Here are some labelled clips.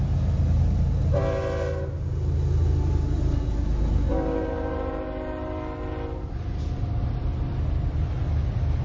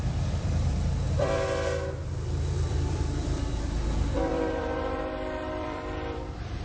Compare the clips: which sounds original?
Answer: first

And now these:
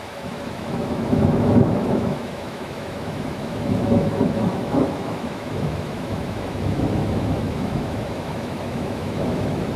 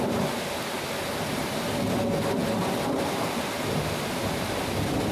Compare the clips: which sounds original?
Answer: second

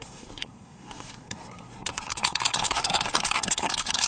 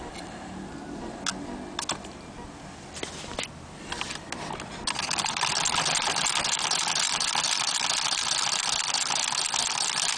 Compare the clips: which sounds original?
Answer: second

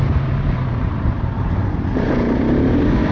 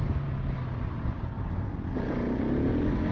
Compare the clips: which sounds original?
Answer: second